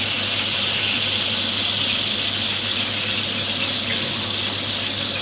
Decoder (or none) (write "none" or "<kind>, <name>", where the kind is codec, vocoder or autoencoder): none